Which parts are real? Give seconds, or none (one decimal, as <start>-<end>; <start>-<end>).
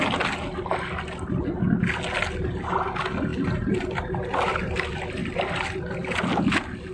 0.0-6.9